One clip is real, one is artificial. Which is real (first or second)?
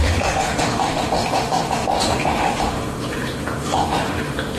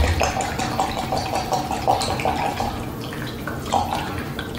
second